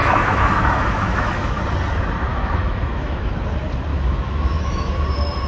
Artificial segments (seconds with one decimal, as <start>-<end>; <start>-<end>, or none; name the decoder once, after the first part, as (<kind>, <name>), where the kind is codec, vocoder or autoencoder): 0.0-1.6 (autoencoder, DAC-VAE); 2.3-3.3; 3.9-4.9

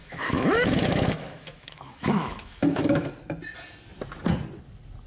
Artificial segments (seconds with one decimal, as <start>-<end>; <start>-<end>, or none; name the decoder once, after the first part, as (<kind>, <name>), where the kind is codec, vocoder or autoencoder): 0.0-3.1 (autoencoder, DAC-VAE)

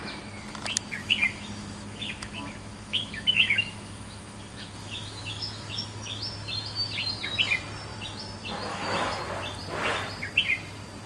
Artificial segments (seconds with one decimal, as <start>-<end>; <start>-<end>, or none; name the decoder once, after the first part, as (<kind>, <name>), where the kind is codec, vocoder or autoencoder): 1.0-6.2 (autoencoder, DAC-VAE); 8.7-9.2